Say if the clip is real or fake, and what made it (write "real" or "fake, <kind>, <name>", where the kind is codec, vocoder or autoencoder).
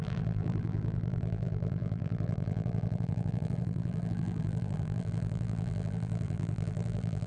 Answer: fake, vocoder, BigVGAN v2